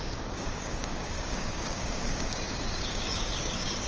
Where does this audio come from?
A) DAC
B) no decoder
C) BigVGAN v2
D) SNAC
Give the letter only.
A